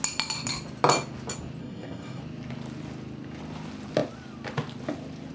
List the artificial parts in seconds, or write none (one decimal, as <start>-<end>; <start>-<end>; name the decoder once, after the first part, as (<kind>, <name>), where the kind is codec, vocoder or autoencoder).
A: 1.6-2.2 (codec, SNAC)